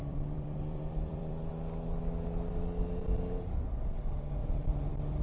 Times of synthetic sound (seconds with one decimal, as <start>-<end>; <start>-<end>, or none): 0.0-1.5; 4.4-5.2